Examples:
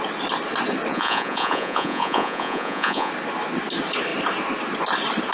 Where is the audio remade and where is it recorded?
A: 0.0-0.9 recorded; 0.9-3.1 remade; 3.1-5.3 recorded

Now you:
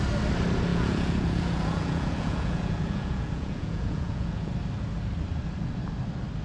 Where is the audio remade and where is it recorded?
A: 0.0-0.7 recorded; 0.7-4.5 remade; 4.5-6.4 recorded

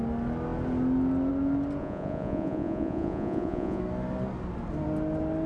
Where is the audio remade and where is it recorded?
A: 0.0-1.8 recorded; 1.8-3.8 remade; 3.8-5.5 recorded

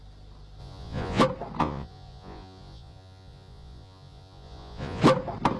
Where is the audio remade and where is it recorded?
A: 0.0-0.6 recorded; 0.6-1.2 remade; 1.2-1.6 recorded; 1.6-5.0 remade; 5.0-5.6 recorded

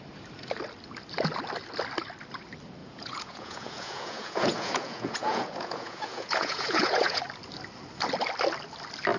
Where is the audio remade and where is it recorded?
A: 0.0-2.8 recorded; 2.8-7.2 remade; 7.2-9.2 recorded